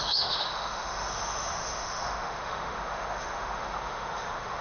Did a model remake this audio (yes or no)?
yes